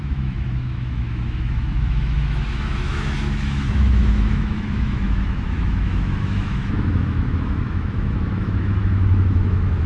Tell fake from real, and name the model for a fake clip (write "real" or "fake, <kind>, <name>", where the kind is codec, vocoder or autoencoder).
fake, autoencoder, DAC-VAE